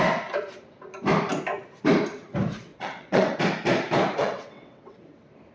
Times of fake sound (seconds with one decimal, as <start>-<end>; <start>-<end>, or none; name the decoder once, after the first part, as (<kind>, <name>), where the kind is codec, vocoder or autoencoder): 2.7-3.4 (vocoder, WaveNeXt); 4.2-5.0